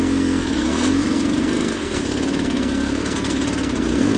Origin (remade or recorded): remade